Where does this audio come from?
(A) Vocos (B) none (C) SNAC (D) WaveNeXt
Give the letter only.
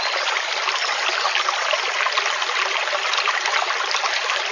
B